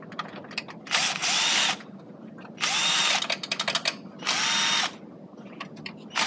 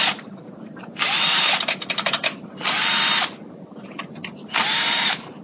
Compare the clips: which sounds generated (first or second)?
second